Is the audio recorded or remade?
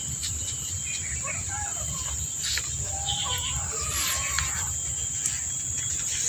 recorded